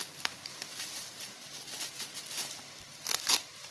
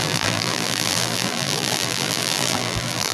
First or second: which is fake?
second